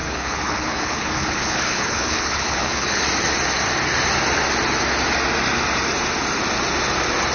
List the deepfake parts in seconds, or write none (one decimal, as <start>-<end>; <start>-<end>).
0.0-3.0